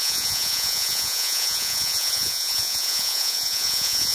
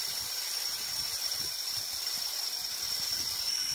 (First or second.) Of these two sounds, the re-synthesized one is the first